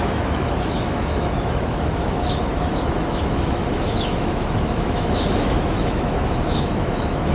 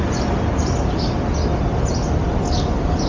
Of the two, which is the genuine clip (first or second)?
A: second